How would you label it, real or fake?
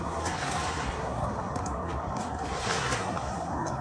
fake